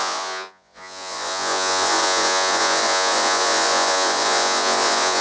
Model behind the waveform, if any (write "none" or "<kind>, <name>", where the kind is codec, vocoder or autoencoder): vocoder, Vocos